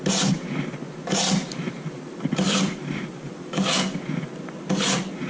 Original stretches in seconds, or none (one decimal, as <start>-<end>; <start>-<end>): 0.0-1.4; 4.0-5.3